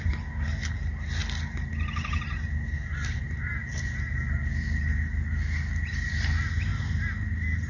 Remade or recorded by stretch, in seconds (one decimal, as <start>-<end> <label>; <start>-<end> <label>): 0.0-7.7 recorded